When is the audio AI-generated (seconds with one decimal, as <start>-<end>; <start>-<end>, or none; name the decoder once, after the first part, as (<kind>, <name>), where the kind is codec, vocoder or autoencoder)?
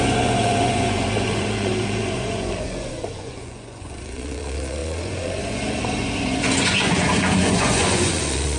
0.0-8.6 (vocoder, Vocos)